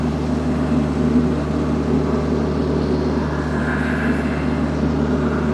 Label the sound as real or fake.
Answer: real